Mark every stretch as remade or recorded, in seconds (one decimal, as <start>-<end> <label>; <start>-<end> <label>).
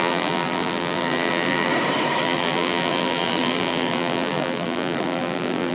0.0-1.7 remade; 1.7-2.2 recorded; 2.2-5.7 remade